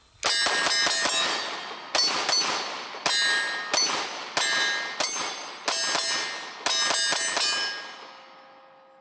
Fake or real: real